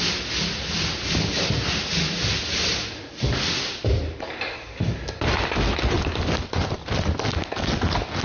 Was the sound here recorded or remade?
recorded